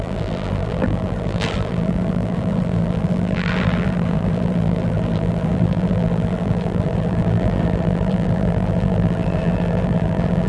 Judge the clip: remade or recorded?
remade